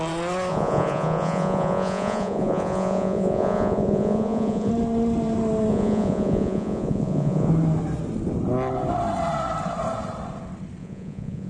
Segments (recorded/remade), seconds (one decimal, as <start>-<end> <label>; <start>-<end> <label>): 0.0-0.5 recorded; 0.5-4.7 remade; 4.7-5.7 recorded; 5.7-7.5 remade; 7.5-10.8 recorded; 10.8-11.5 remade